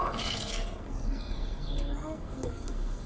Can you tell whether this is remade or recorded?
remade